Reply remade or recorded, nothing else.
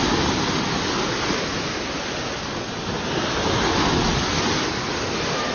recorded